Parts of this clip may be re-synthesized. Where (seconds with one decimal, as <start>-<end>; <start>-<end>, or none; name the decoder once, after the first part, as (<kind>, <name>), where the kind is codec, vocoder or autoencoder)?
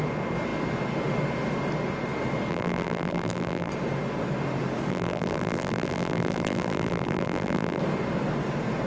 2.5-3.7 (vocoder, BigVGAN v2); 4.9-7.8